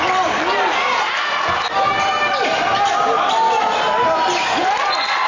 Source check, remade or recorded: recorded